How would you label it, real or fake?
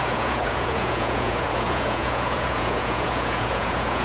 fake